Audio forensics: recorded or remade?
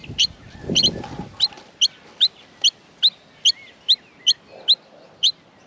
recorded